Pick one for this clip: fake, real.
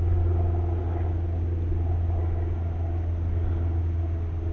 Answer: real